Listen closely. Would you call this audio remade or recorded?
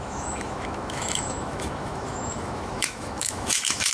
remade